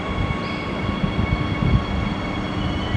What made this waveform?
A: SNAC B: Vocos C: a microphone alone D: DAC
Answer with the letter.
C